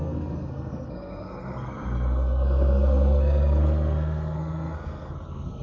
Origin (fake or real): fake